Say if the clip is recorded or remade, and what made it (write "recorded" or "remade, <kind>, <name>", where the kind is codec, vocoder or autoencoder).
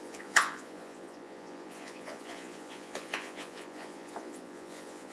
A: remade, vocoder, Vocos